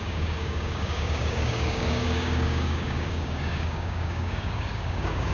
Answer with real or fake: fake